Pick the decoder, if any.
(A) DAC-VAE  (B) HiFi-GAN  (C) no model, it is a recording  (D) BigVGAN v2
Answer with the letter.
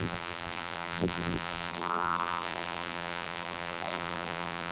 D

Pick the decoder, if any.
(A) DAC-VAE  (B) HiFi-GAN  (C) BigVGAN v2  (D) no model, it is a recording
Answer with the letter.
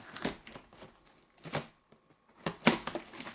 D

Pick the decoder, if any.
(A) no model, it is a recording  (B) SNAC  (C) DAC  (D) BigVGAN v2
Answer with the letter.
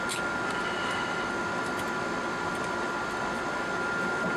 A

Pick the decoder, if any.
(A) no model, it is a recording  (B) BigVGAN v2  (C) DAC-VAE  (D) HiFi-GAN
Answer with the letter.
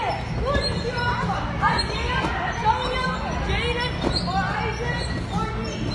A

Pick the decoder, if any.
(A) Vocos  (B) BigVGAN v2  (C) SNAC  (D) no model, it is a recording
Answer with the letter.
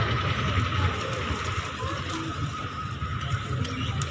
D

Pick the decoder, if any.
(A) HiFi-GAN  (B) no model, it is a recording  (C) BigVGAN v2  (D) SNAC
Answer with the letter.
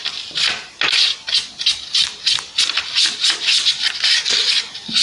B